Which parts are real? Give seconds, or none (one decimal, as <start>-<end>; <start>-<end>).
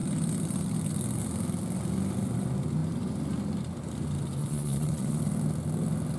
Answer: 0.0-4.4; 5.2-6.2